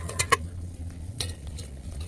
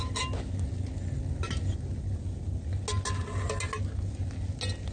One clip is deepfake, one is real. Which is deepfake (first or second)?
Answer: first